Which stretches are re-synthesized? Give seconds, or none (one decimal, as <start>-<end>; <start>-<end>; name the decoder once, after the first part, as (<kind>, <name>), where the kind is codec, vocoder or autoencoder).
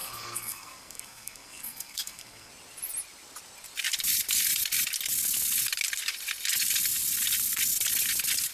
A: 0.0-2.5 (codec, SNAC)